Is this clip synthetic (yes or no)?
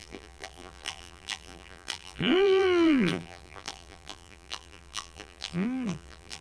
yes